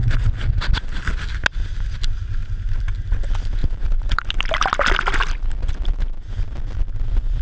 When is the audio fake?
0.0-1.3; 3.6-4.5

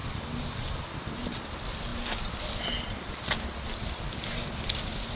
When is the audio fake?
none